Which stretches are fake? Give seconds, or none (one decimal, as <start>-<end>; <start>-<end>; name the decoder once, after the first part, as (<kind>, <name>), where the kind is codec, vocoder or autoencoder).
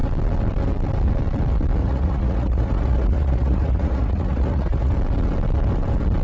1.8-4.9 (vocoder, Vocos)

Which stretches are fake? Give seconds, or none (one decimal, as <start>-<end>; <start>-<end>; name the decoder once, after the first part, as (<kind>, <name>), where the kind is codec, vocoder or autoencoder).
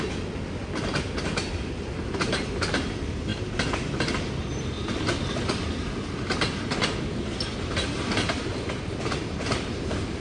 none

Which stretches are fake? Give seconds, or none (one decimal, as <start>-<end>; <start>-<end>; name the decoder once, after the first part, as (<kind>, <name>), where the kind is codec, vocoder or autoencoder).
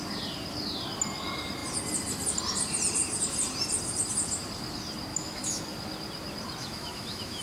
5.1-5.6 (autoencoder, DAC-VAE); 6.6-7.4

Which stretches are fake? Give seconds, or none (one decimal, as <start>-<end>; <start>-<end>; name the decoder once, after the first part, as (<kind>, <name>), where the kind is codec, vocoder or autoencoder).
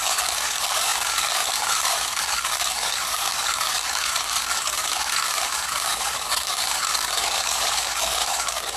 0.0-8.8 (codec, DAC)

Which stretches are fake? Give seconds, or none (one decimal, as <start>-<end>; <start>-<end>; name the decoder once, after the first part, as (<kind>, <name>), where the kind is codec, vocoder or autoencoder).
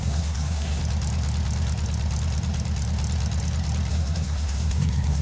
0.0-0.8 (codec, SNAC); 3.9-5.2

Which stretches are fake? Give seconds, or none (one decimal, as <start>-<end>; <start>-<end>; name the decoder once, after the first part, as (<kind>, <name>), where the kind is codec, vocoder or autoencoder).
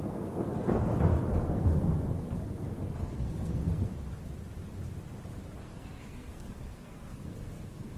0.0-3.9 (codec, SNAC); 5.6-8.0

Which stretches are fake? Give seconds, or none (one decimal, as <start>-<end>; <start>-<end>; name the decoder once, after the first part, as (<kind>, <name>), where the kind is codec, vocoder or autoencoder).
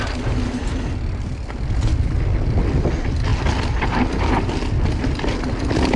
none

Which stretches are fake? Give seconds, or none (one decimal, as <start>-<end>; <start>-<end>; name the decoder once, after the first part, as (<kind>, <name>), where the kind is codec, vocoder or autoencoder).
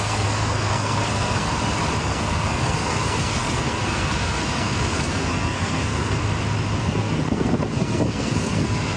0.0-1.5 (codec, SNAC); 2.0-6.2; 6.8-9.0